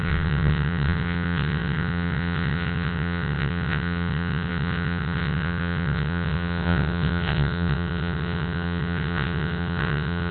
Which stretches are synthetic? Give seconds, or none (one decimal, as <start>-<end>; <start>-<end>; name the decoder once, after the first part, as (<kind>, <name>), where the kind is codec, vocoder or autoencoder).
0.0-10.3 (vocoder, WaveNeXt)